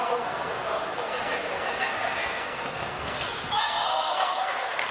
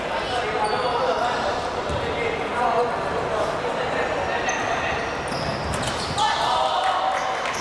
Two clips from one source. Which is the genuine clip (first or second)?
second